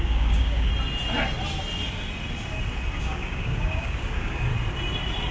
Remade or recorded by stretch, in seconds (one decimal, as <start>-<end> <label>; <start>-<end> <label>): 0.0-0.7 remade; 0.7-3.0 recorded; 3.0-4.5 remade; 4.5-5.3 recorded